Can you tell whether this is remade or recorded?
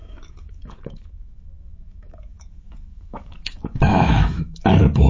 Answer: remade